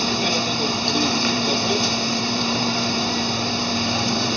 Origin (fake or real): fake